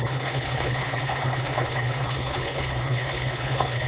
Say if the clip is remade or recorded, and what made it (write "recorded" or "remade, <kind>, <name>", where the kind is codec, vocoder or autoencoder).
remade, codec, HILCodec